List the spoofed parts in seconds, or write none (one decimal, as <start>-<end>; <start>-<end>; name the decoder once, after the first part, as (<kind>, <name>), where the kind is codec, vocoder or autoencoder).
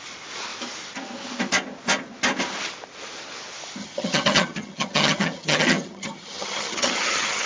3.8-7.5 (vocoder, HiFi-GAN)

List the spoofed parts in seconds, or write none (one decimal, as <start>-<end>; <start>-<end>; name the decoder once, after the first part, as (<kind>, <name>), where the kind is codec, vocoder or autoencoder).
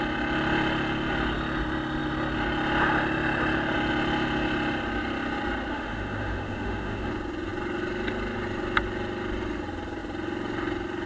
5.7-7.1 (autoencoder, DAC-VAE)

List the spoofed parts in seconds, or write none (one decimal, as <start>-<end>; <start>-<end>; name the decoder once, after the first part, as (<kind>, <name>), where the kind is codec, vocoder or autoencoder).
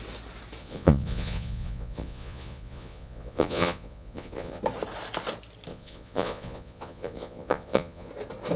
0.6-4.6 (vocoder, Vocos); 5.7-8.1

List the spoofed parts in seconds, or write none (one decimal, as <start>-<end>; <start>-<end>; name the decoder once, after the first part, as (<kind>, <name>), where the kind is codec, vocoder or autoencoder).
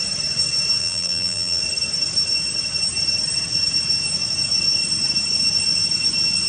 0.8-1.6 (vocoder, BigVGAN v2)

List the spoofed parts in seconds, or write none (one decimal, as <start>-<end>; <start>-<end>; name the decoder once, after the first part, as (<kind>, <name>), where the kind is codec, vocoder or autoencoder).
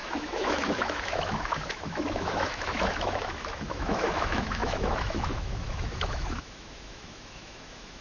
0.0-8.0 (autoencoder, DAC-VAE)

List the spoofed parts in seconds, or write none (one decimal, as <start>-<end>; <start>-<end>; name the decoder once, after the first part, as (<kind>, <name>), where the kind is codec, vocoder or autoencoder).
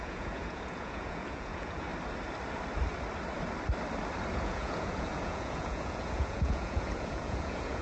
0.0-1.9 (vocoder, Vocos); 4.3-7.8